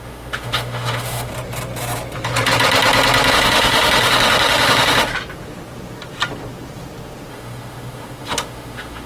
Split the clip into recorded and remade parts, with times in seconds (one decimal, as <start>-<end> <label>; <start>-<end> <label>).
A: 0.0-1.3 remade; 1.3-3.3 recorded; 3.3-5.1 remade; 5.1-7.3 recorded; 7.3-9.1 remade